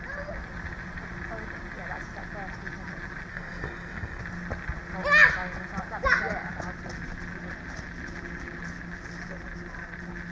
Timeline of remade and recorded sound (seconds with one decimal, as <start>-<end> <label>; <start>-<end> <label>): 0.0-3.3 recorded; 3.3-4.2 remade; 4.2-10.3 recorded